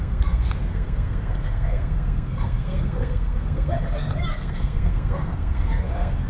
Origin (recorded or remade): remade